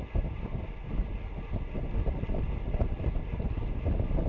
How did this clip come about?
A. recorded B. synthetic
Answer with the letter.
A